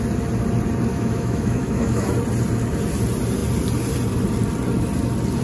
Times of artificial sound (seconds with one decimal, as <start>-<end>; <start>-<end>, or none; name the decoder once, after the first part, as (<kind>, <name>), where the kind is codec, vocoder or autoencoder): 0.9-2.1 (autoencoder, DAC-VAE)